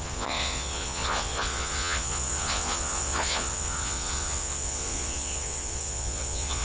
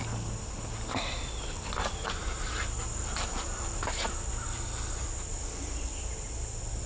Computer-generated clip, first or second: first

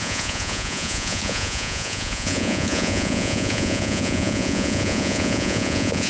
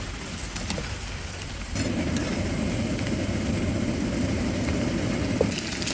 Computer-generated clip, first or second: first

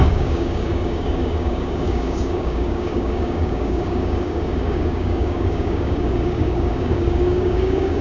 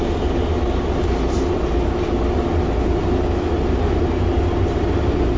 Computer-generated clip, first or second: first